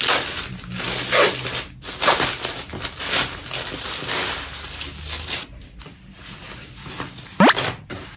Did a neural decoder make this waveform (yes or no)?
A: no